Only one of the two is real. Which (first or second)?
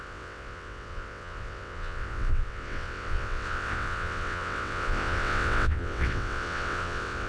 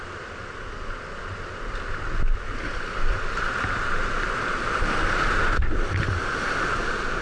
second